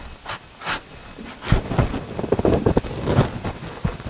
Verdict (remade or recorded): recorded